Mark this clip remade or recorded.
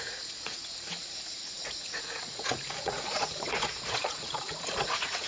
remade